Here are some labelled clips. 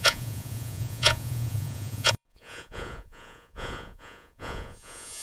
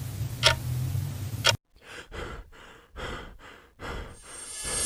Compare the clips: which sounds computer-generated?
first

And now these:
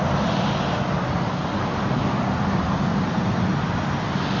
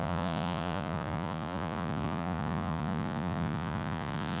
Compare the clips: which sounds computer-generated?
second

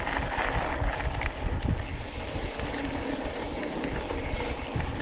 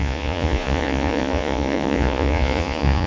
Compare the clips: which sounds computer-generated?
second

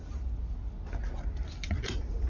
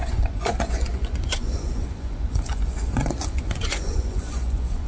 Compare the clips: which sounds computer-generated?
second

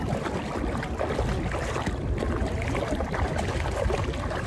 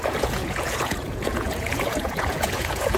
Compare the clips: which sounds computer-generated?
second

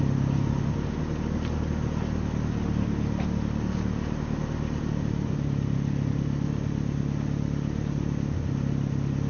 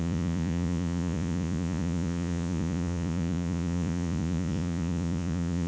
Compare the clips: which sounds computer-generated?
second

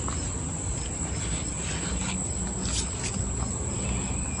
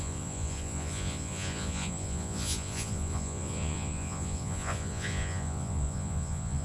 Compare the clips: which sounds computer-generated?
second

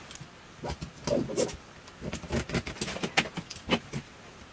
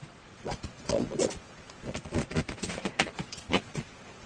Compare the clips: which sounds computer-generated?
second